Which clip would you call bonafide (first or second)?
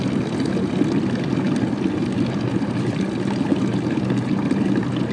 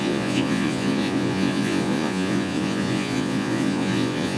first